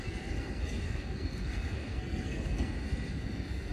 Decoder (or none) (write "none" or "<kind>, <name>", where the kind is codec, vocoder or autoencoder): codec, SNAC